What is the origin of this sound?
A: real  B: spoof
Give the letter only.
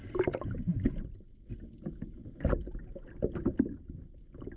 A